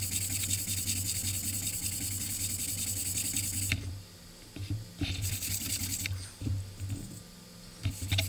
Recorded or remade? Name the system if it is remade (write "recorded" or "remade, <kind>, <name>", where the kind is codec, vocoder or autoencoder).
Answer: recorded